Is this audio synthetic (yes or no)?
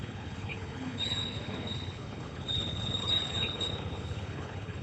yes